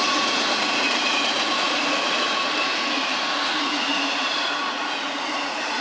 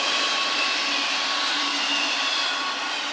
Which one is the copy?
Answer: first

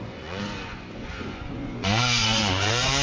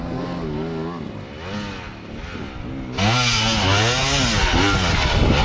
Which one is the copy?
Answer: first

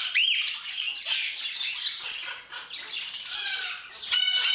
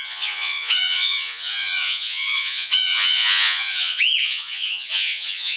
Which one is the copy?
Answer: second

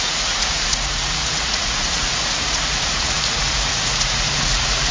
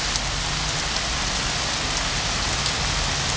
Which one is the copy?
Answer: first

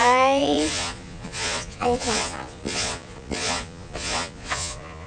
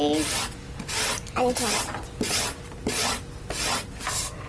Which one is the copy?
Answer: first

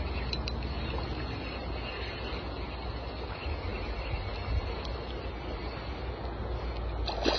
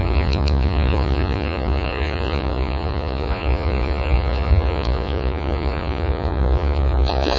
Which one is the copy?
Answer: second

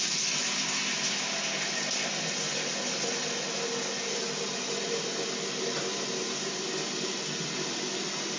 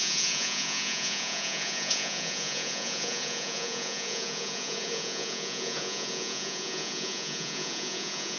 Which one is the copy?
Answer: second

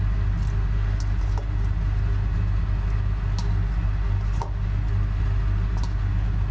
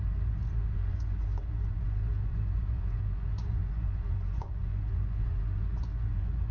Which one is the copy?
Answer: second